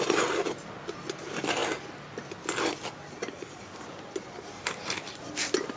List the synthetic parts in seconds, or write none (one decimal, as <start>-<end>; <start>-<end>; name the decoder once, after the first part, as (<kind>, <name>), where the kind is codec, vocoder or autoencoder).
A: none